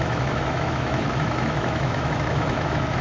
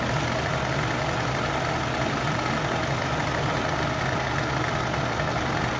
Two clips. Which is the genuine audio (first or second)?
second